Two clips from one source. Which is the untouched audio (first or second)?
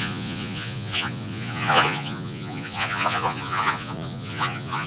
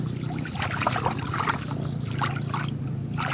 second